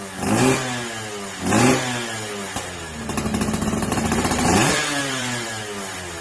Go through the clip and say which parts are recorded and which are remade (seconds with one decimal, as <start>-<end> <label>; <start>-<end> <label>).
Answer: 0.0-5.0 recorded; 5.0-5.5 remade; 5.5-6.2 recorded